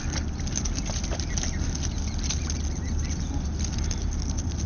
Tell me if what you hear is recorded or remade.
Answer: recorded